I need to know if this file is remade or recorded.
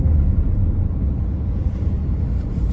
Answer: recorded